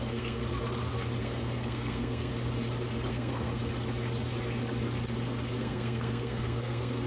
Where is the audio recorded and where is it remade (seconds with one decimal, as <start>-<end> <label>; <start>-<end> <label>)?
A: 0.0-0.4 remade; 0.4-1.2 recorded; 1.2-2.3 remade; 2.3-3.1 recorded; 3.1-3.6 remade; 3.6-5.6 recorded; 5.6-7.1 remade